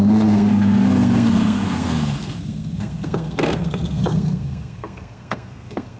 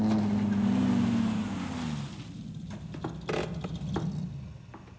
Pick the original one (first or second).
second